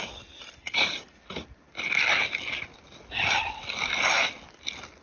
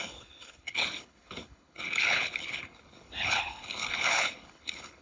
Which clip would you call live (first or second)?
first